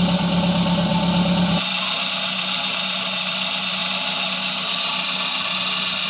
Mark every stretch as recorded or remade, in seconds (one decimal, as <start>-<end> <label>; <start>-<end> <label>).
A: 0.0-6.1 recorded